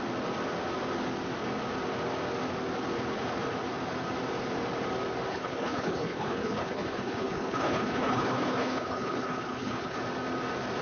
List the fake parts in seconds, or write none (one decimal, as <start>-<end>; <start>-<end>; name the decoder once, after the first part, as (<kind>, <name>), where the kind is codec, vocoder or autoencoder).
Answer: 5.3-10.0 (codec, HILCodec)